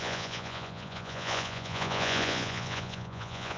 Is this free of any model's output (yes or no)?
no